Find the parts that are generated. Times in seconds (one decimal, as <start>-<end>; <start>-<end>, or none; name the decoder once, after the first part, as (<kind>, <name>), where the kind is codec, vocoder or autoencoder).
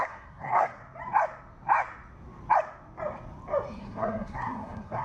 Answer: 0.0-0.8 (codec, SNAC); 3.8-5.0